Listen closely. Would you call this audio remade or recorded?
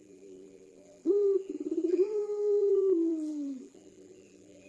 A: remade